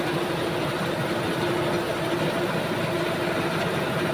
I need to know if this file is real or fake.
real